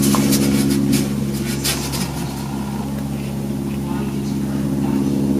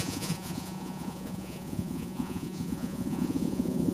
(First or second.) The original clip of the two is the first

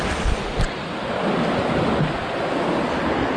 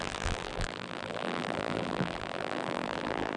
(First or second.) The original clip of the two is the first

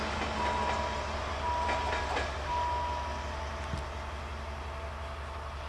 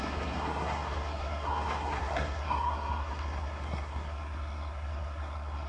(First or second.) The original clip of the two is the first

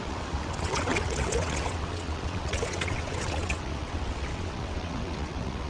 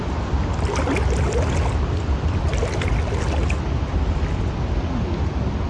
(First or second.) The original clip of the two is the second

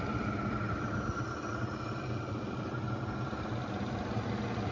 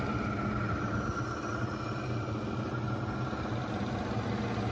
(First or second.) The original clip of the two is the second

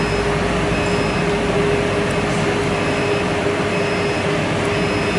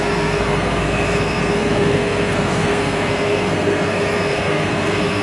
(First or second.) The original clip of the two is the first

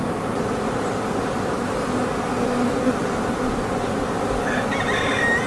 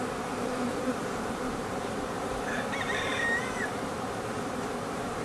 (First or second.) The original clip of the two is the first